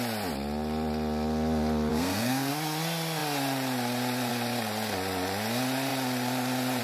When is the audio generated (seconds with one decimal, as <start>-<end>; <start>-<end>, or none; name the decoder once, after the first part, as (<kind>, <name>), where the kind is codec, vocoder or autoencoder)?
1.9-2.5 (codec, SNAC)